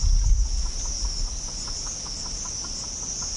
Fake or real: real